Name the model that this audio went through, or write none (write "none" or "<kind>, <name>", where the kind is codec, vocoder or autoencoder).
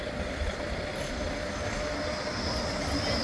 none